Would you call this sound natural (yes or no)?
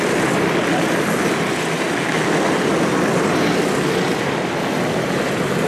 yes